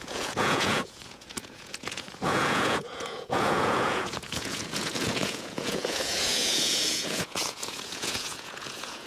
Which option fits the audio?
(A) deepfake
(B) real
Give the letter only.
A